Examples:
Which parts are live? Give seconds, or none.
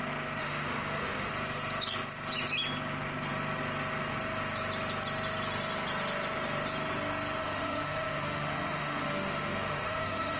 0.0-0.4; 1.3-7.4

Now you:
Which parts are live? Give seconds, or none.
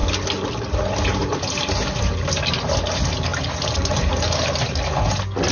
0.0-3.3; 4.5-5.5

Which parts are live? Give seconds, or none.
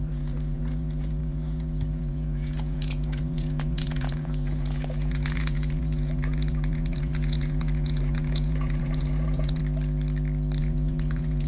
9.6-10.6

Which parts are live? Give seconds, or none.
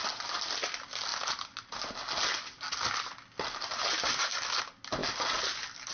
0.0-5.9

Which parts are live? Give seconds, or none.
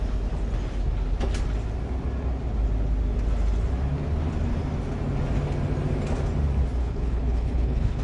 0.0-6.8